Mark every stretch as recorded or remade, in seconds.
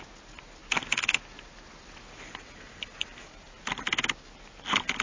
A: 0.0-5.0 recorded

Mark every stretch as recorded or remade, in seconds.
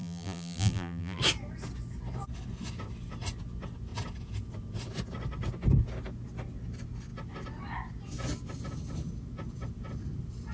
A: 0.0-1.2 remade; 1.2-10.5 recorded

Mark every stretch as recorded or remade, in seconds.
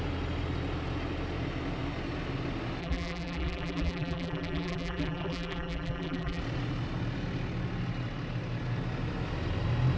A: 0.0-2.8 recorded; 2.8-6.4 remade; 6.4-10.0 recorded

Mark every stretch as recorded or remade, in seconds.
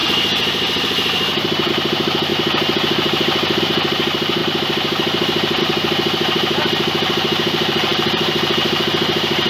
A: 0.0-9.5 remade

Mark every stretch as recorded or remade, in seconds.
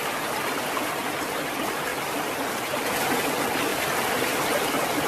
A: 0.0-3.7 recorded; 3.7-4.4 remade; 4.4-5.1 recorded